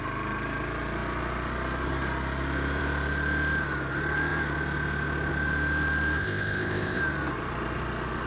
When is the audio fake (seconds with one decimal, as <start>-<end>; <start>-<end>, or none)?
6.2-7.0